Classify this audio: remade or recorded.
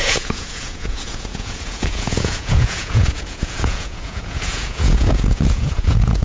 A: remade